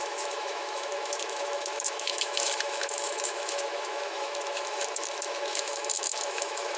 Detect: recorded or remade remade